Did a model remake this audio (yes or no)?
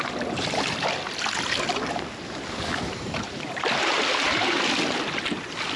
no